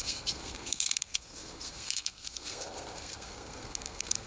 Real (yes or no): no